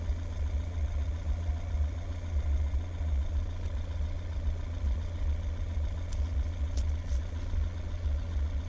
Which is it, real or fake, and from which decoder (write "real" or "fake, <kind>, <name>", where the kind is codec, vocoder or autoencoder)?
fake, vocoder, Vocos